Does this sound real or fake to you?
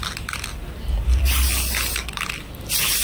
real